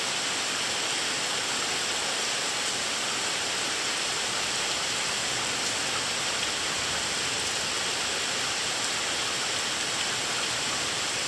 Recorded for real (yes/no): yes